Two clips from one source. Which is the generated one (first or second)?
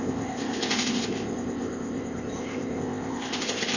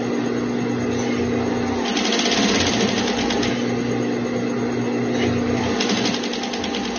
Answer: first